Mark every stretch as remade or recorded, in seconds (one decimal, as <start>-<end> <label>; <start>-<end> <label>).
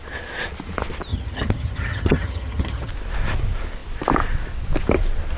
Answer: 0.0-1.1 recorded; 1.1-2.9 remade; 2.9-5.4 recorded